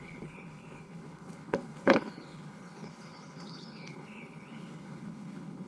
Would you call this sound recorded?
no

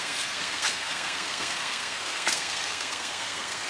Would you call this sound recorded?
no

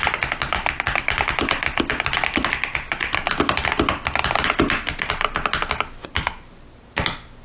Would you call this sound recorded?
yes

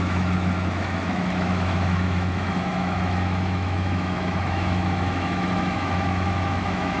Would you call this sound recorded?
no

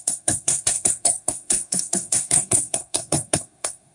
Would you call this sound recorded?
no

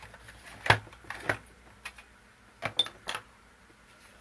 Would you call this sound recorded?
yes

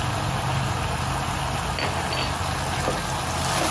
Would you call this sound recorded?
yes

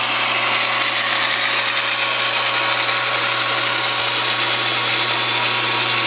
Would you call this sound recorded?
yes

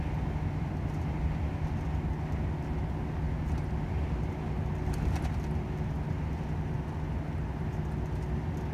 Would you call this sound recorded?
yes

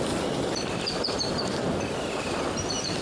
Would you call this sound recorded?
yes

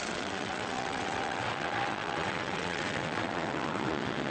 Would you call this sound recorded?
no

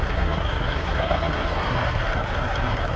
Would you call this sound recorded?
no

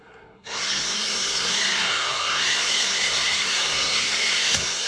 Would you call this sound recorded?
no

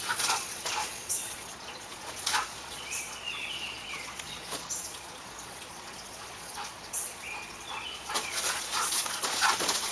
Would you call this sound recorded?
no